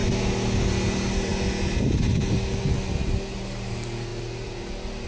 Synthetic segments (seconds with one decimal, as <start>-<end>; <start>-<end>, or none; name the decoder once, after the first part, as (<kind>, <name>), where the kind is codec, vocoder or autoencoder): none